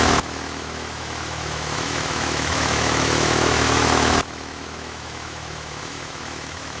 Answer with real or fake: fake